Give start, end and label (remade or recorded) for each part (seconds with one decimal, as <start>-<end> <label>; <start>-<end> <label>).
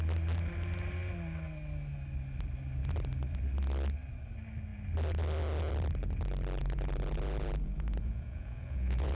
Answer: 0.0-6.6 recorded; 6.6-9.2 remade